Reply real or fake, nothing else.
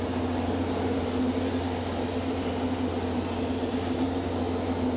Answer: real